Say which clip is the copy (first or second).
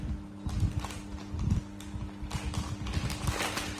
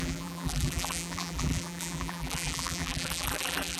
second